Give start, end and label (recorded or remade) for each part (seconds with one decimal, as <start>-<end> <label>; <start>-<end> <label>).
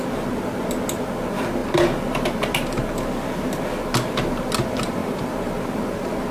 0.0-5.0 recorded; 5.0-5.6 remade; 5.6-6.3 recorded